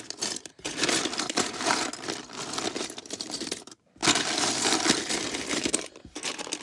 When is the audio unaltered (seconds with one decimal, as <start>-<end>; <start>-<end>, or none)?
1.9-2.8; 4.0-5.3